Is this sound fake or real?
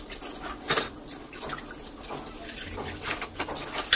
real